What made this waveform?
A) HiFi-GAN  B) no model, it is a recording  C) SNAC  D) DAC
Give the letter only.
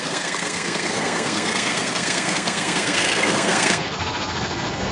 C